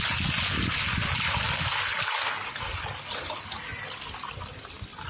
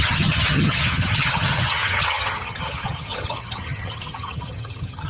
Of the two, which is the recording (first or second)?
first